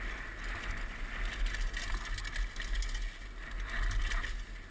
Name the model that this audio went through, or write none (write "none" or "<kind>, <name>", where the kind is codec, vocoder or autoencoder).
none